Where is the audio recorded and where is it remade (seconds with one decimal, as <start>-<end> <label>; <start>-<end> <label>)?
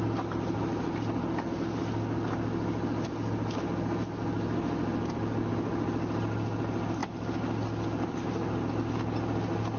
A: 0.0-9.8 recorded